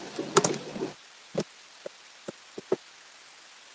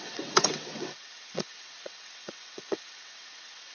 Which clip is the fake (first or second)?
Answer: second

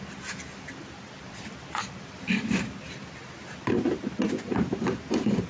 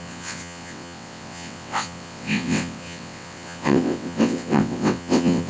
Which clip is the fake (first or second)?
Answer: second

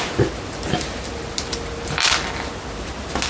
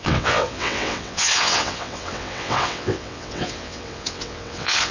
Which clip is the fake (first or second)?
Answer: second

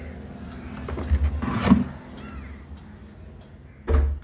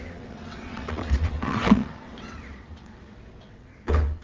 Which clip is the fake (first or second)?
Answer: second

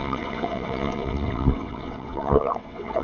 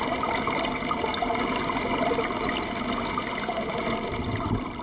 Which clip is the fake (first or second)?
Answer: first